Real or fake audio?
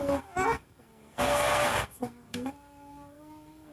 fake